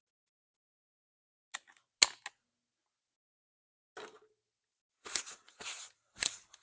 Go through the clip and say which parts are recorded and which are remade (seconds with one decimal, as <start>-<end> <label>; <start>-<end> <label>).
0.0-0.7 remade; 0.7-4.7 recorded; 4.7-6.6 remade

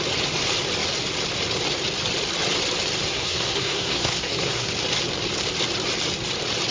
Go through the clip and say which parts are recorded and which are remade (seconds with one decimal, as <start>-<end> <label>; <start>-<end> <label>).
0.0-3.1 recorded; 3.1-4.7 remade; 4.7-6.7 recorded